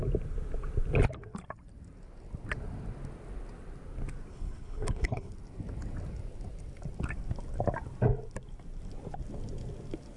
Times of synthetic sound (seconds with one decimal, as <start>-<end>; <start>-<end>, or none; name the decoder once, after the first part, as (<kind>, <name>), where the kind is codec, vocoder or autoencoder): 4.3-5.3 (codec, HILCodec)